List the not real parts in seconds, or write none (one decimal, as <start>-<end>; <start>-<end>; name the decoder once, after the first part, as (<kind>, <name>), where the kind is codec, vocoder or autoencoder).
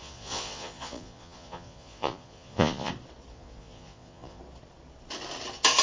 0.0-2.9 (vocoder, Vocos); 3.3-4.4